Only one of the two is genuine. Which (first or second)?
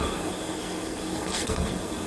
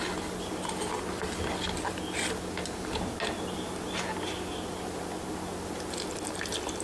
second